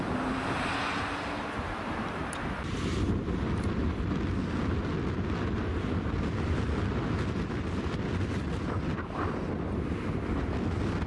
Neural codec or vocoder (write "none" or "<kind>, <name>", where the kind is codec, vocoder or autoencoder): none